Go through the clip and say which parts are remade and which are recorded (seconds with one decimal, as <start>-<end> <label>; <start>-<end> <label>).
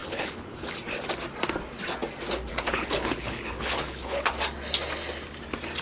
0.0-0.7 remade; 0.7-2.5 recorded; 2.5-4.3 remade; 4.3-5.8 recorded